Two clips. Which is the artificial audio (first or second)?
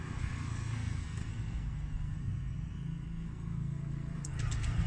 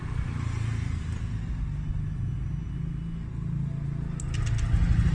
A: first